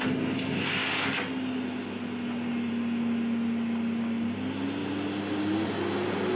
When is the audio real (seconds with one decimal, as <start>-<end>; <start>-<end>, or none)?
0.0-6.4